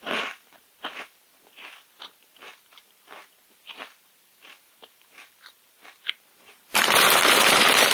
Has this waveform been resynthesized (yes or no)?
yes